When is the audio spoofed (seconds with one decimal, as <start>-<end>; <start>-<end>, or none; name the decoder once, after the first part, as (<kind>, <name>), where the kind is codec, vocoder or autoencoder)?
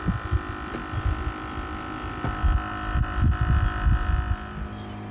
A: none